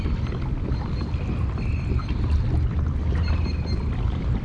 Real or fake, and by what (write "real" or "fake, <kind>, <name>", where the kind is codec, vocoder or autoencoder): real